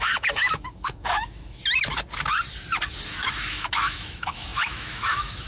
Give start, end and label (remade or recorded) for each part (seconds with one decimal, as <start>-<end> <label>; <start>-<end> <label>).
0.0-1.6 remade; 1.6-3.1 recorded; 3.1-5.5 remade